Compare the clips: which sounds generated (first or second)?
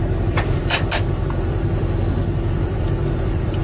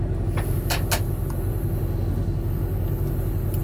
first